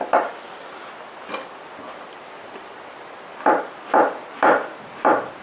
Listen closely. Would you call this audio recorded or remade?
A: recorded